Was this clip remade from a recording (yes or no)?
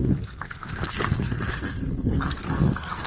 yes